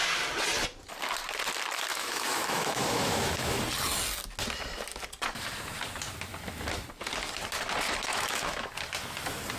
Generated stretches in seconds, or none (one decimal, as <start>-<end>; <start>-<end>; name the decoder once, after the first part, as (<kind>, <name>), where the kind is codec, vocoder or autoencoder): 1.9-3.6 (autoencoder, DAC-VAE); 8.1-8.7